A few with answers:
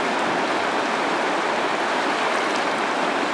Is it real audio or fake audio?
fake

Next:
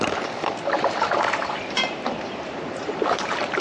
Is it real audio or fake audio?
fake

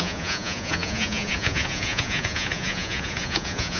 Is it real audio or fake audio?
fake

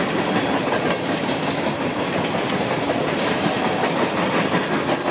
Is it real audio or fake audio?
real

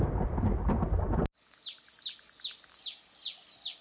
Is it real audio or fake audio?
real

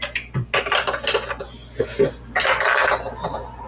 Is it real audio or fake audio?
real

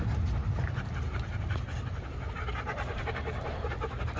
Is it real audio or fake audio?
real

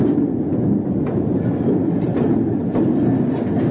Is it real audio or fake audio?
real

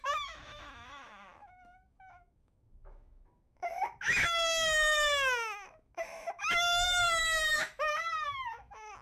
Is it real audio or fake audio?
fake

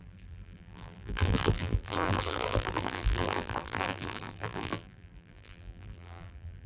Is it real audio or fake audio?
fake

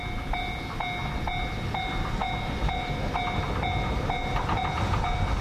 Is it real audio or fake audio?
real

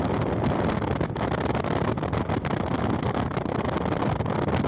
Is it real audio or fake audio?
real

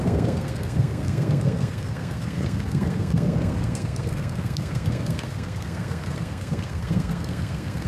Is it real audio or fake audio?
fake